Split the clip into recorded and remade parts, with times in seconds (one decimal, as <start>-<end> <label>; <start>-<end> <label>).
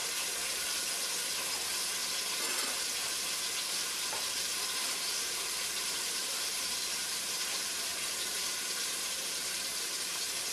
0.0-4.2 recorded; 4.2-10.5 remade